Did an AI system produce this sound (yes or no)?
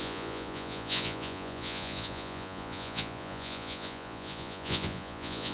yes